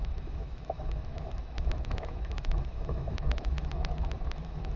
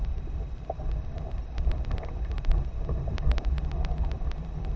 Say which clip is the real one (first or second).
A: second